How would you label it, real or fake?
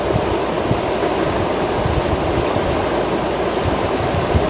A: real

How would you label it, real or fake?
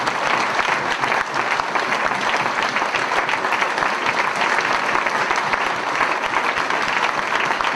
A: real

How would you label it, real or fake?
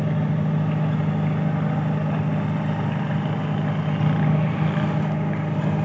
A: real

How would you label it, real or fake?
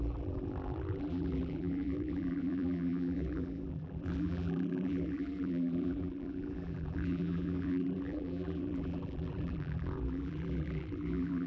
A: fake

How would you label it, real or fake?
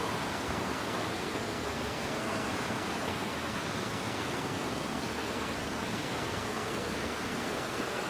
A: fake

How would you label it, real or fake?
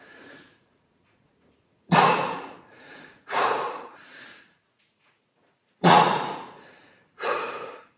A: fake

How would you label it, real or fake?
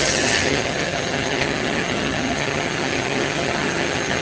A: fake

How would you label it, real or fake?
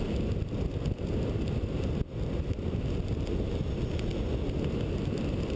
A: real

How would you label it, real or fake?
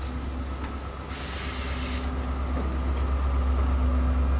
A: real